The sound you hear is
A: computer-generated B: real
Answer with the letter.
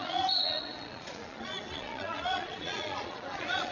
A